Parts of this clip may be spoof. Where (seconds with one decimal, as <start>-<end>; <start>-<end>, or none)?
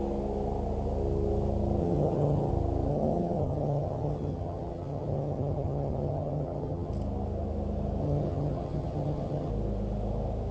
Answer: 1.8-2.5; 2.9-6.9; 8.0-9.5